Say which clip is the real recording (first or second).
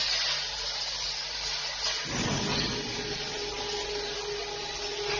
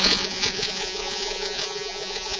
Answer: first